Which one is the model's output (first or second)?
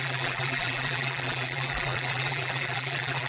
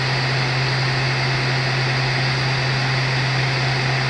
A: first